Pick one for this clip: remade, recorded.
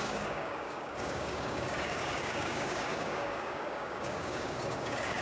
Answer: remade